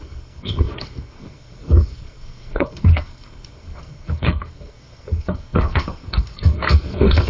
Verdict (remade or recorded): remade